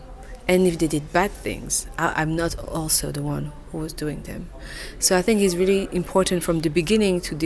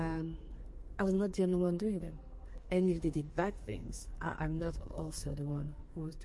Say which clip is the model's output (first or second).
second